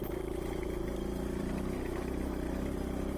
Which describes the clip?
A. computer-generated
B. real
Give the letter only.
B